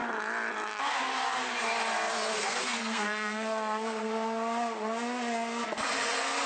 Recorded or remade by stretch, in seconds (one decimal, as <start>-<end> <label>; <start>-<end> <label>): 0.0-2.3 recorded; 2.3-4.1 remade; 4.1-6.5 recorded